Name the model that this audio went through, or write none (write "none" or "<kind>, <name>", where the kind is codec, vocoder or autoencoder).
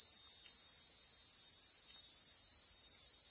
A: none